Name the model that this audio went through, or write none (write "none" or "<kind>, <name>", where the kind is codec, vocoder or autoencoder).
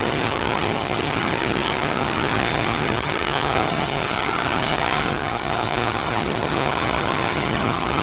vocoder, HiFi-GAN